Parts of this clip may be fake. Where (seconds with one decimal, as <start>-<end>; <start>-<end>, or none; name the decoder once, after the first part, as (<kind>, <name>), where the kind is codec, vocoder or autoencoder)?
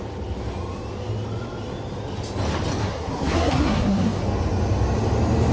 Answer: 2.8-4.2 (codec, SNAC)